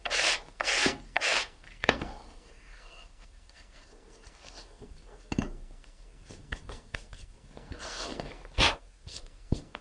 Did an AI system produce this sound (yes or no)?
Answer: yes